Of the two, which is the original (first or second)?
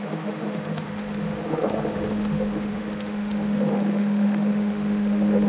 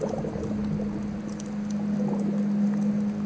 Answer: second